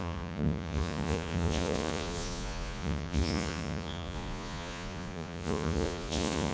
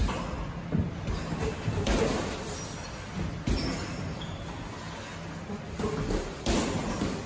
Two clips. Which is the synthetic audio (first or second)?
first